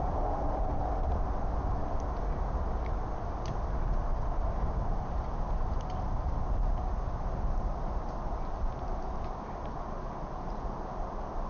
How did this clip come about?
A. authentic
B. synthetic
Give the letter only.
A